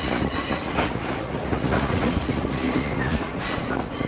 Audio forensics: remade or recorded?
remade